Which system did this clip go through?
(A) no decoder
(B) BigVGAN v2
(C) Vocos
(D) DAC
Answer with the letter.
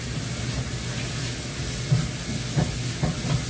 A